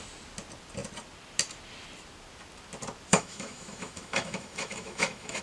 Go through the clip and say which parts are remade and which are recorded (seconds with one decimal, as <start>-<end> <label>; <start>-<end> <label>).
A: 0.0-3.1 recorded; 3.1-5.4 remade